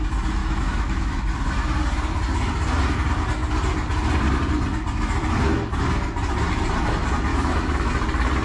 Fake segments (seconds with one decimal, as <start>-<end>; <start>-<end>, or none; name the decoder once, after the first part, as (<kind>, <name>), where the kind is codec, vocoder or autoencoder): 0.4-1.2 (autoencoder, DAC-VAE); 7.3-7.9